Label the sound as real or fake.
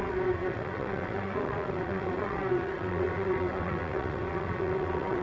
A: fake